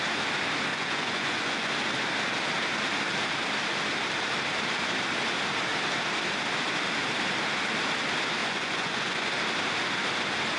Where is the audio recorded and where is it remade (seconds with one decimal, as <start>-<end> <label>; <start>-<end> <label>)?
0.0-0.7 recorded; 0.7-1.7 remade; 1.7-8.4 recorded; 8.4-9.3 remade; 9.3-10.6 recorded